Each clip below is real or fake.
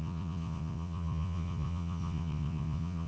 fake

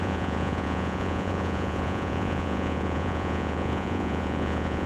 fake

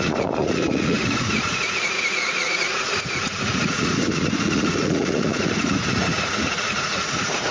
fake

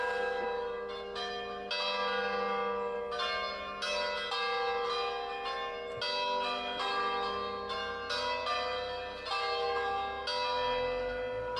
real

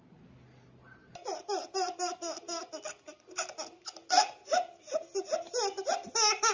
real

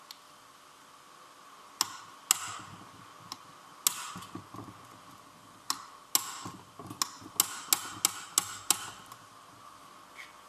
real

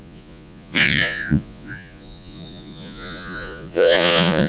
fake